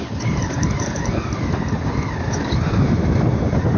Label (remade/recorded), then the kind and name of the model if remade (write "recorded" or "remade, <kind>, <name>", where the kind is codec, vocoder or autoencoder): recorded